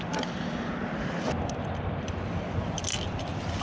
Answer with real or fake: real